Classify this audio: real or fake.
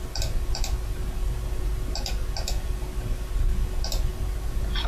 real